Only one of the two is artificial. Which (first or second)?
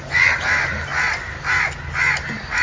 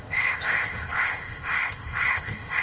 second